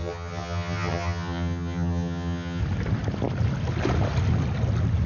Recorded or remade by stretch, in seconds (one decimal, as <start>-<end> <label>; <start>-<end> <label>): 0.0-2.6 remade; 2.6-5.1 recorded